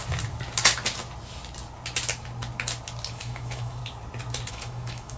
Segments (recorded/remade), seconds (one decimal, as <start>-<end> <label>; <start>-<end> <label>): 0.0-3.1 recorded; 3.1-3.8 remade; 3.8-4.5 recorded; 4.5-5.2 remade